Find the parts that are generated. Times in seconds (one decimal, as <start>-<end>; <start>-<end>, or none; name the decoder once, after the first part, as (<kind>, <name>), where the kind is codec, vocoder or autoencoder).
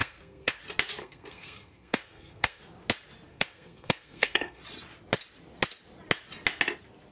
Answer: 0.0-0.6 (codec, SNAC); 1.0-2.6; 3.3-4.6